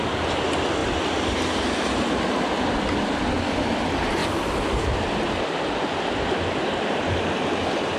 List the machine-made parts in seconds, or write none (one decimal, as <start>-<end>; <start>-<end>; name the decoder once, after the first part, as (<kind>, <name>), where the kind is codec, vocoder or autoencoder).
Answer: none